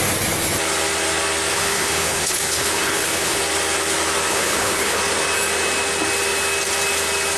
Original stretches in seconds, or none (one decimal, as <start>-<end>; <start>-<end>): 0.0-1.5; 3.4-4.3; 5.0-7.4